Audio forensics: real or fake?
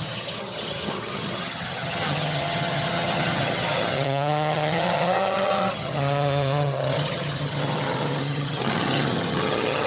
fake